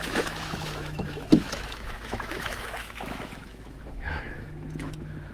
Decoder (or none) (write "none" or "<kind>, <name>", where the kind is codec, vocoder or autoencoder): autoencoder, DAC-VAE